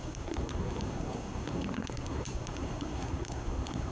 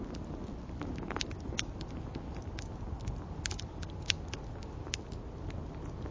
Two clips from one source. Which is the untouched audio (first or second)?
second